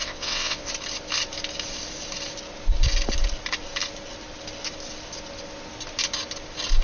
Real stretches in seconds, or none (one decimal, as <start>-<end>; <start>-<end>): 0.7-6.8